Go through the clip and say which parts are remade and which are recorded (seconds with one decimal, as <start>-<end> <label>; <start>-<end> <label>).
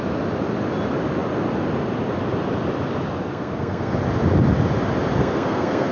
0.0-3.3 recorded; 3.3-3.9 remade; 3.9-5.2 recorded; 5.2-5.9 remade